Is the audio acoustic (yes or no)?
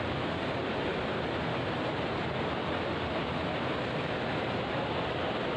yes